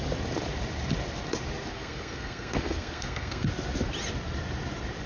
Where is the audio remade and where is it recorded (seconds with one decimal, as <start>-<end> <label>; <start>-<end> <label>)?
0.0-1.7 recorded; 1.7-3.5 remade; 3.5-5.1 recorded